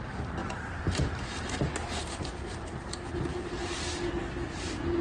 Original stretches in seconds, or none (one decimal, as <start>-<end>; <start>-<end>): 0.0-0.4; 0.9-3.3